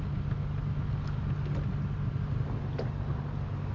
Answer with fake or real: real